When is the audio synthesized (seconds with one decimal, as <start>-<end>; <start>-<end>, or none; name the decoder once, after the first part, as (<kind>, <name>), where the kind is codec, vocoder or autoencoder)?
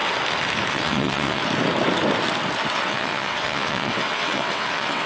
0.7-1.4 (vocoder, WaveNeXt); 2.7-5.1